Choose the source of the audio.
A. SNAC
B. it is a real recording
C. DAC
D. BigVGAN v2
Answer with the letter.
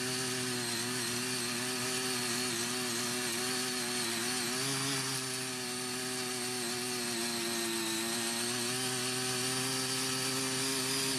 B